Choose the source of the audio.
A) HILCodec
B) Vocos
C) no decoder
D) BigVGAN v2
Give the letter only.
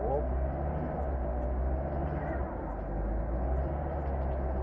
C